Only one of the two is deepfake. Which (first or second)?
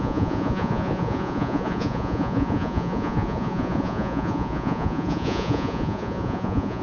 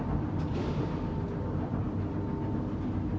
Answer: first